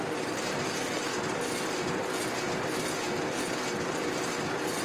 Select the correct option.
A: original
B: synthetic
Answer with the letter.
A